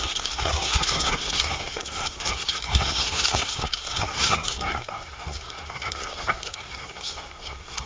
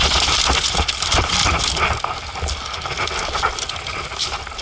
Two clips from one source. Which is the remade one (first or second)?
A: first